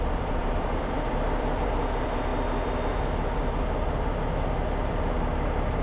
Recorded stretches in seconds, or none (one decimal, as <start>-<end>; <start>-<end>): 2.3-4.9